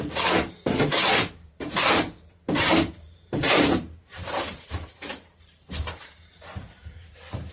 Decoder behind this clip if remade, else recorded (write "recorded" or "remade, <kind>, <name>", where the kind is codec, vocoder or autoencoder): remade, vocoder, BigVGAN v2